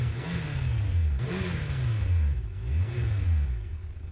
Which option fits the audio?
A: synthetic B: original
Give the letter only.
A